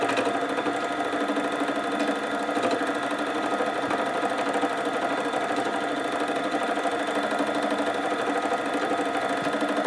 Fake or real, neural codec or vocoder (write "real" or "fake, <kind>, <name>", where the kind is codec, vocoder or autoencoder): real